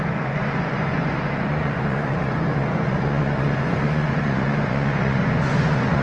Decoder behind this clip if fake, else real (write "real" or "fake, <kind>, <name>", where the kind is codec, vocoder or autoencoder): fake, vocoder, Vocos